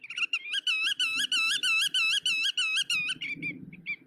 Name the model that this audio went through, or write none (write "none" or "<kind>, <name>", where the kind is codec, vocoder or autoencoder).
none